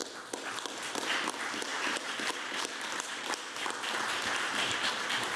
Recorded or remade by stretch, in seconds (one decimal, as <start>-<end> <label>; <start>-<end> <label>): 0.0-1.1 recorded; 1.1-5.4 remade